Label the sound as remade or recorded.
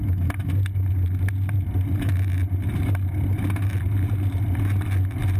recorded